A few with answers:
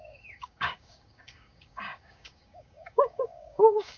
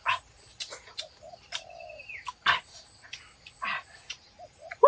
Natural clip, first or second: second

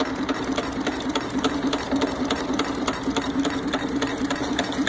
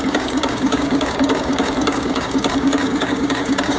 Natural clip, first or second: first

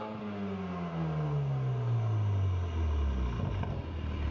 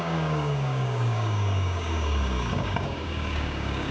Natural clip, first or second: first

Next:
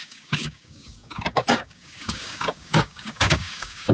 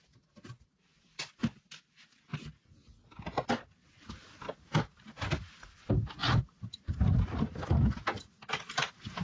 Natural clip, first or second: second